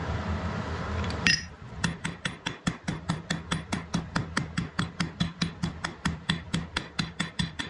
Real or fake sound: fake